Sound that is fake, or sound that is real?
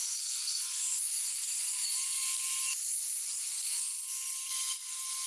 fake